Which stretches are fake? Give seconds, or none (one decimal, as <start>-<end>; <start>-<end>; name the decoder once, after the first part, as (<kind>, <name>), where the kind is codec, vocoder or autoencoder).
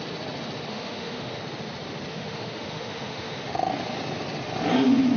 0.7-1.4 (autoencoder, DAC-VAE); 2.1-3.7